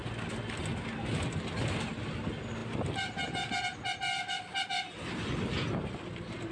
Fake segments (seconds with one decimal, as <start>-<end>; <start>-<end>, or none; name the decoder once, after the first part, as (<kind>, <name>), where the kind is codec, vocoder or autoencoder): none